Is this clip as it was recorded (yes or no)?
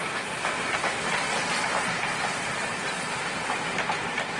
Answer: yes